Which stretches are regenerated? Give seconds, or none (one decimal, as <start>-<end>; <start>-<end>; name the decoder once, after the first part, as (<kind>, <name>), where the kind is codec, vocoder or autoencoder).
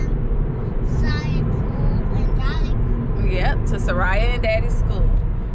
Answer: 0.0-2.6 (vocoder, BigVGAN v2)